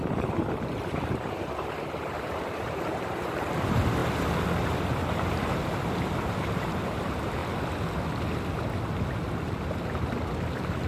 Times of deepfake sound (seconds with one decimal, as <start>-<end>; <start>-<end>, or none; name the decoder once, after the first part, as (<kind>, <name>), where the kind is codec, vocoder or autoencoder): 0.0-4.0 (vocoder, BigVGAN v2); 5.3-7.4